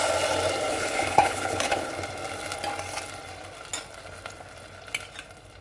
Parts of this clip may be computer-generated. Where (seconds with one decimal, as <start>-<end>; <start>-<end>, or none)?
0.7-1.9